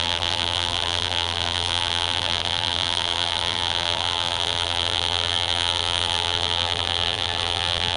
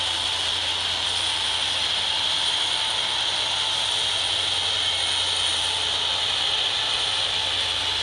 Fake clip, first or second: first